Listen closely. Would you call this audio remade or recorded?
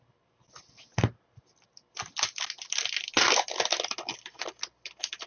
recorded